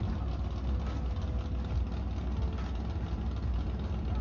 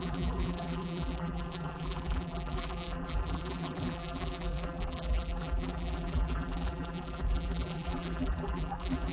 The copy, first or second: second